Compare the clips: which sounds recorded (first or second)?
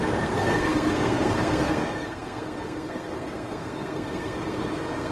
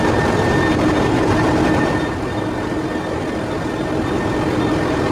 second